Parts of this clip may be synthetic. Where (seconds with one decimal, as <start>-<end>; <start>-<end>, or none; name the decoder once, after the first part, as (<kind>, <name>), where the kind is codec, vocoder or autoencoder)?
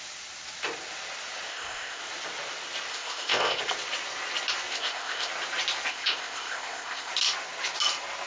1.5-2.0 (codec, ZipCodec); 2.9-3.6; 4.7-5.3; 5.9-7.1